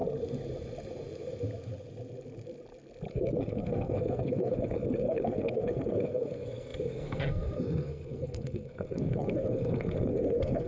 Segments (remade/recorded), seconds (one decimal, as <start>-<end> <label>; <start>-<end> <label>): 0.0-3.1 recorded; 3.1-10.7 remade